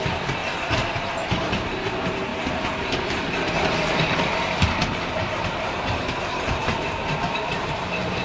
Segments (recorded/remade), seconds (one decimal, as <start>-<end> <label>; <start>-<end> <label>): 0.0-0.4 remade; 0.4-1.0 recorded; 1.0-8.2 remade